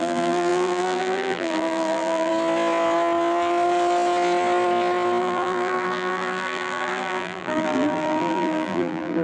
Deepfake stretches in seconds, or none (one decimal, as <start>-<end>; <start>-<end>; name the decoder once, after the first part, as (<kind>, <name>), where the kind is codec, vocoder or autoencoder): 0.0-2.3 (vocoder, BigVGAN v2); 5.2-9.2